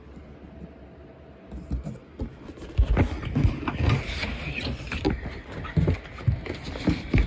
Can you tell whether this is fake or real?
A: real